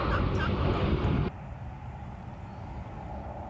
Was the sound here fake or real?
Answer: real